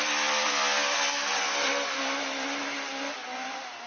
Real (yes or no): yes